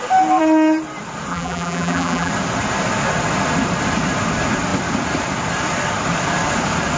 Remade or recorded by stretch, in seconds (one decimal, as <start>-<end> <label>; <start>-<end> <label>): 0.0-1.3 recorded; 1.3-2.3 remade; 2.3-7.0 recorded